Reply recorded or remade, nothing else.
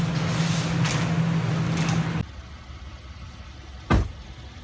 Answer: recorded